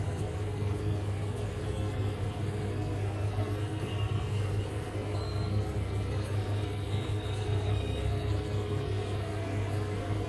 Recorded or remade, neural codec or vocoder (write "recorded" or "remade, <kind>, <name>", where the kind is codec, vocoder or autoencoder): remade, codec, SNAC